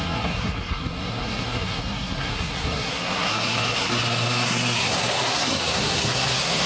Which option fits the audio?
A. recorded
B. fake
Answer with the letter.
B